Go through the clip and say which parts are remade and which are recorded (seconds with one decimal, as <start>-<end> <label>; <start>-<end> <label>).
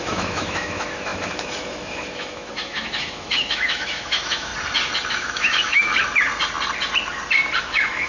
0.0-4.5 remade; 4.5-5.1 recorded; 5.1-5.9 remade; 5.9-7.6 recorded; 7.6-8.1 remade